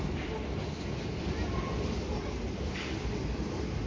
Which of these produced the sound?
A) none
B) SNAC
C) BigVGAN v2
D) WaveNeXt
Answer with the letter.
A